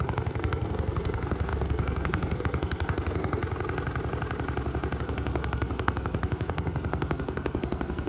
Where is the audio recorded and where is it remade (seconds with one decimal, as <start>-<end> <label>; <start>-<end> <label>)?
0.0-3.4 remade; 3.4-5.0 recorded; 5.0-8.1 remade